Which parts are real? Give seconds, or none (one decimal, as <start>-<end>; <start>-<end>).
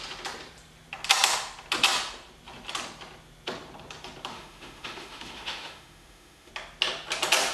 0.0-4.3; 6.5-7.5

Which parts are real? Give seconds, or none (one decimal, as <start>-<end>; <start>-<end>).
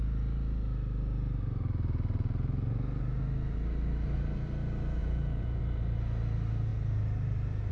0.0-5.0; 5.6-7.7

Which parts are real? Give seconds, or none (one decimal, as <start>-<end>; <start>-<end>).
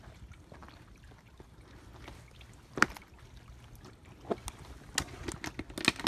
0.0-6.1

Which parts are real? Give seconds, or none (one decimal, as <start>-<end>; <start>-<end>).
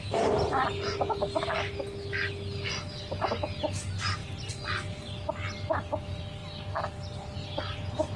0.0-8.2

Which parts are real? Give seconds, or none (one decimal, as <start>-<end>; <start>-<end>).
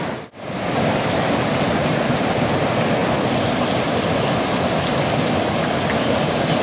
0.0-6.6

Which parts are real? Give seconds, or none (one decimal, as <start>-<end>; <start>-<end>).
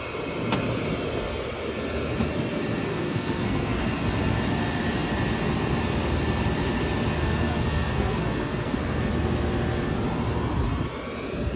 0.0-2.9; 3.8-7.2; 9.1-11.6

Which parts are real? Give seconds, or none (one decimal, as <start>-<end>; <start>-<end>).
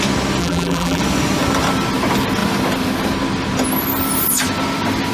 0.0-0.4; 1.0-5.1